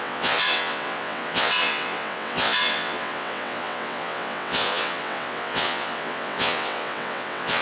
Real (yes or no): no